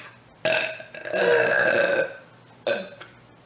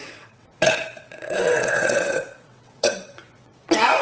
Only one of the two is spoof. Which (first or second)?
second